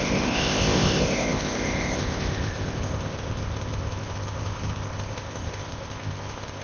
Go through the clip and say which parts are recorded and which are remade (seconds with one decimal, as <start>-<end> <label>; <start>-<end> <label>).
0.0-6.6 remade